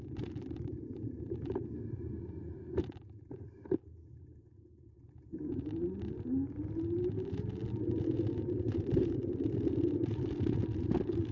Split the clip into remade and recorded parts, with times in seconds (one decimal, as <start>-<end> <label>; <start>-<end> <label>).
0.0-11.3 recorded